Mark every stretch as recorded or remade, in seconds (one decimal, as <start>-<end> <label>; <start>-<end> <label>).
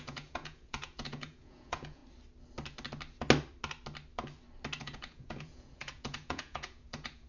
0.0-2.0 remade; 2.0-4.8 recorded; 4.8-7.3 remade